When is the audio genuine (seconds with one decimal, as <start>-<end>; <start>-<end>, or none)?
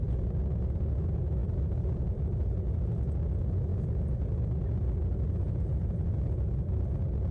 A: 0.0-7.3